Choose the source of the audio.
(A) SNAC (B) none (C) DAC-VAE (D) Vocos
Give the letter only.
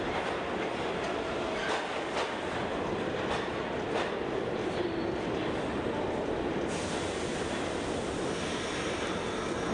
B